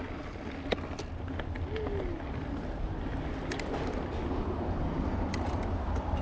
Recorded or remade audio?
recorded